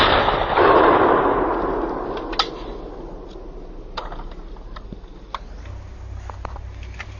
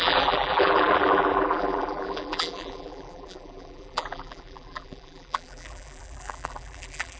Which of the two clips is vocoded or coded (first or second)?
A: second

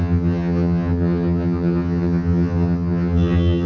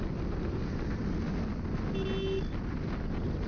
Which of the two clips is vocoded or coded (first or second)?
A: first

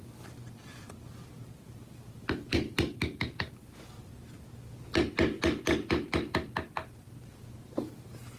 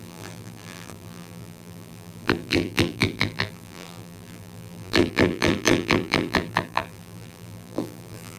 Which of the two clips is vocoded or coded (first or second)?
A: second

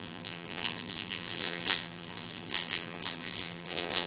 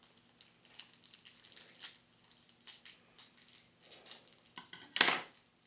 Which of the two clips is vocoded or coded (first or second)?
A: first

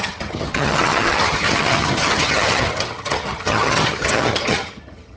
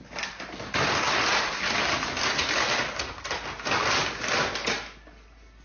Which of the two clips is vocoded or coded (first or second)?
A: first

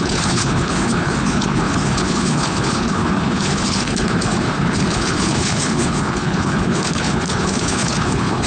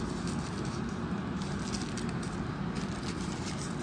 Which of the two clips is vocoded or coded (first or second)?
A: first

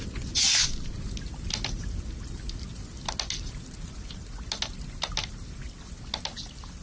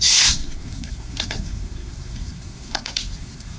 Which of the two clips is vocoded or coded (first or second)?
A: second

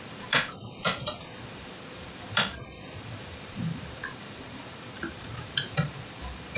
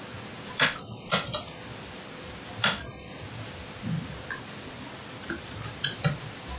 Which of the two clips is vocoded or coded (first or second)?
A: first